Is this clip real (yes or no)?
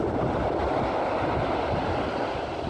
yes